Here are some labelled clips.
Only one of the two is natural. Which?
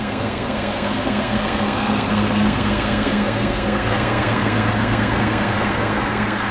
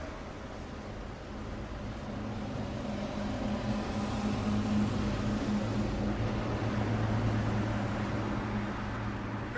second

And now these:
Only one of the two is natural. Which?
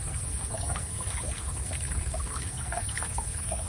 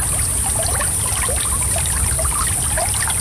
second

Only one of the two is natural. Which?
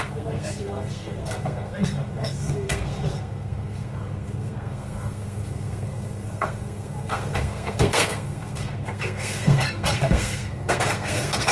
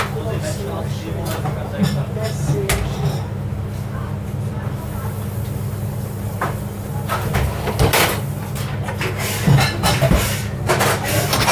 second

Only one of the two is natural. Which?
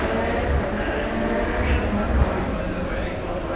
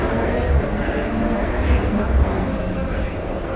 first